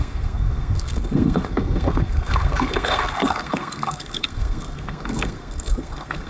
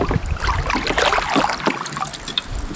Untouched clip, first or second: second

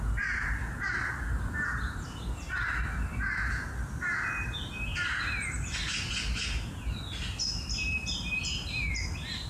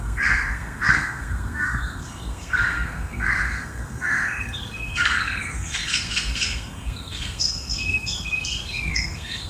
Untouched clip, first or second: first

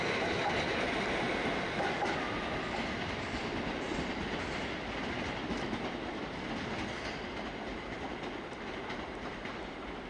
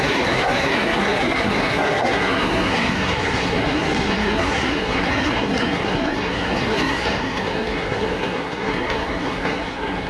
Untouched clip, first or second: first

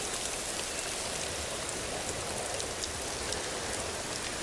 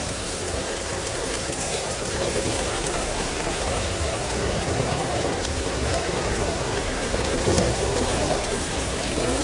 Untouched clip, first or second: first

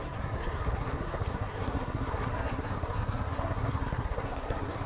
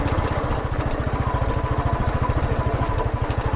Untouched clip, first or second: second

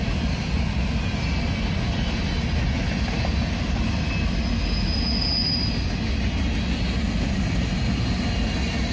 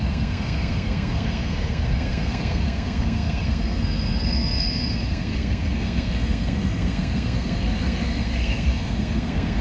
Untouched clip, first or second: first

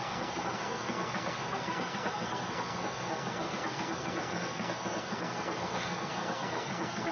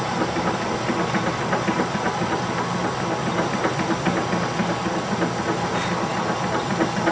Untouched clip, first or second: second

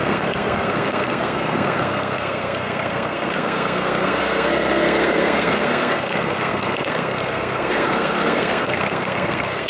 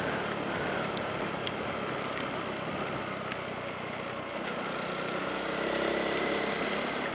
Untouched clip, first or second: second